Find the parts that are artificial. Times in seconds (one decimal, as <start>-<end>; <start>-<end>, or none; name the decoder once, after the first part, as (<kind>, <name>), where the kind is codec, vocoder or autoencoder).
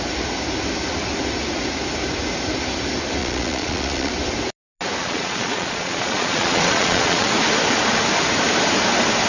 3.2-4.1 (vocoder, Vocos); 5.0-7.3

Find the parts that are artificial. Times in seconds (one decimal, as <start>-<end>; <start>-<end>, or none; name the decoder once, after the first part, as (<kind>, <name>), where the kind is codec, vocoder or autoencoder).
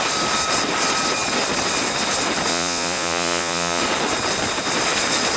2.5-3.8 (vocoder, Vocos)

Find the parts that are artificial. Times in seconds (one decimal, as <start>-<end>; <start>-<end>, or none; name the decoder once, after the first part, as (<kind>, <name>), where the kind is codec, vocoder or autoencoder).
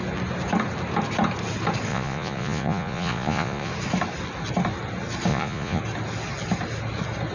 1.9-3.7 (vocoder, Vocos); 5.3-5.8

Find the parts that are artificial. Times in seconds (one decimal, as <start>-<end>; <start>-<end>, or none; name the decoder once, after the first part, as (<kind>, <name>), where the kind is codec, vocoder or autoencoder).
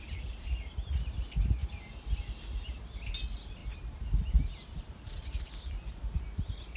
none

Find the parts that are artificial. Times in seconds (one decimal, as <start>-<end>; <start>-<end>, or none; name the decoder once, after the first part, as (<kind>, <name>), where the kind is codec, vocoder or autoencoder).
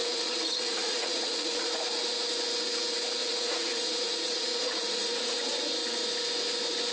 0.0-1.7 (vocoder, Vocos); 3.2-5.6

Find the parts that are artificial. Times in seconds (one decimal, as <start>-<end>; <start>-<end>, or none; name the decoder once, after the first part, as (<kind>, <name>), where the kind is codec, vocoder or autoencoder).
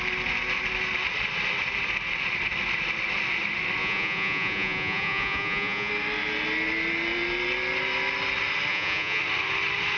3.8-5.9 (vocoder, Vocos); 8.7-9.2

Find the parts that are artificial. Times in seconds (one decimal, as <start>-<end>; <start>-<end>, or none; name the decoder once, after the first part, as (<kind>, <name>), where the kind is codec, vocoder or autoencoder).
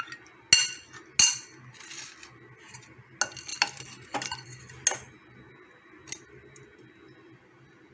none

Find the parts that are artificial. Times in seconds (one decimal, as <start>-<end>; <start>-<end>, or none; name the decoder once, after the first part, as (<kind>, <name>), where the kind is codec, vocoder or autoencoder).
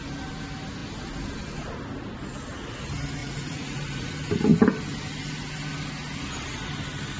3.2-4.1 (vocoder, Vocos)